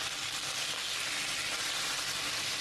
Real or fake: real